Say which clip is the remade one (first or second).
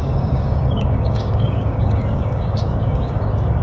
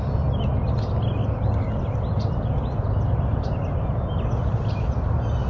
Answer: first